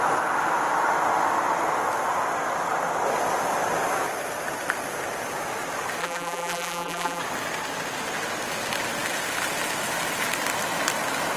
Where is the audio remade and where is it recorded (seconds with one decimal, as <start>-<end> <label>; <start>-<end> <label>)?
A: 0.0-6.0 recorded; 6.0-7.2 remade; 7.2-11.4 recorded